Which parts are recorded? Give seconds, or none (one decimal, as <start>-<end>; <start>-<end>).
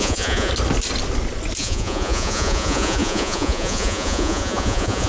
0.5-1.6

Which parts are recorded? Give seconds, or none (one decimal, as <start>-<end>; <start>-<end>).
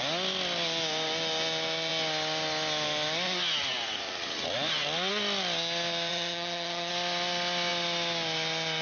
0.0-6.1; 6.9-8.8